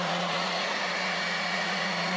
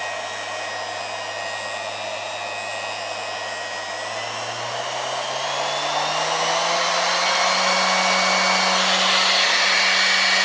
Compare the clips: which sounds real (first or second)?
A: second